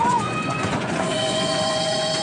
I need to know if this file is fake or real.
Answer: fake